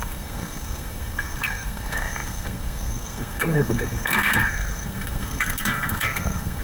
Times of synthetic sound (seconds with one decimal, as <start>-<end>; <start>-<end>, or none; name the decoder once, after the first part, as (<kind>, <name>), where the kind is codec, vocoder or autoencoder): 0.0-6.6 (codec, SNAC)